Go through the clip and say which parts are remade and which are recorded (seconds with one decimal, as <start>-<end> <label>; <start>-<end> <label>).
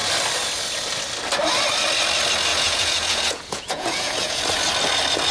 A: 0.0-2.5 recorded; 2.5-4.4 remade; 4.4-5.3 recorded